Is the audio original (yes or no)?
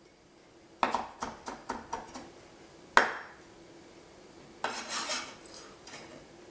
yes